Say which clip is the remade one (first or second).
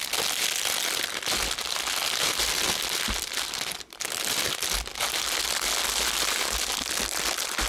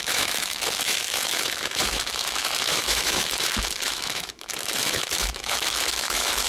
second